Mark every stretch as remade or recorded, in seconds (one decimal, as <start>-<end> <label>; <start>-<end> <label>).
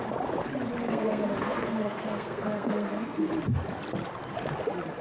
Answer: 0.0-0.8 recorded; 0.8-3.3 remade; 3.3-5.0 recorded